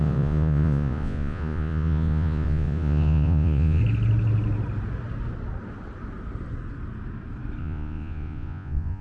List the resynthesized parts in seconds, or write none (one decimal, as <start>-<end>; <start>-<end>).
0.0-3.8; 7.6-9.0